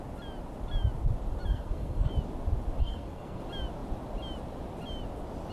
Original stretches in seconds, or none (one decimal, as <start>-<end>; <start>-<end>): 0.0-1.5; 2.1-2.8; 3.4-5.5